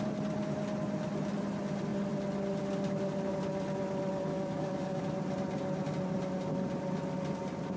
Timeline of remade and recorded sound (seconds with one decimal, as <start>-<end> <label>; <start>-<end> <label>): 0.0-4.3 recorded; 4.3-5.0 remade; 5.0-7.8 recorded